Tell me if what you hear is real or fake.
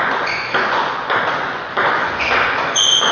fake